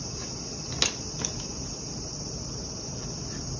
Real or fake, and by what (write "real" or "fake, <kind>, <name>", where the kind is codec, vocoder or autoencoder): real